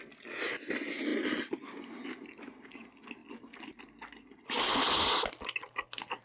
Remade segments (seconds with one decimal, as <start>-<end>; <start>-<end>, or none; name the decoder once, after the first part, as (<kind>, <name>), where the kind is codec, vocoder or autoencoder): none